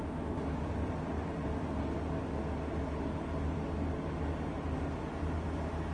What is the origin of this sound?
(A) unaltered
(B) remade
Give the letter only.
A